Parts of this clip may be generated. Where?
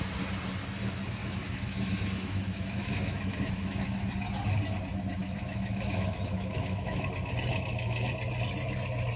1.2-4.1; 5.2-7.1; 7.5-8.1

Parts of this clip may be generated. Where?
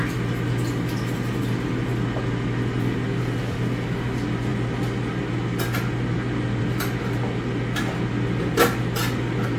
none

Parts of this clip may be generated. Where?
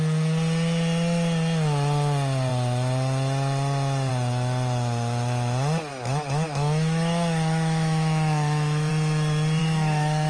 5.9-8.9; 9.6-10.3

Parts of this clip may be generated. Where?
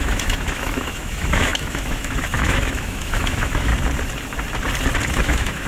0.0-3.7; 5.1-5.7